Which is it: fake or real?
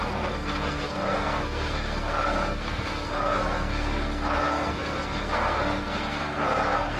fake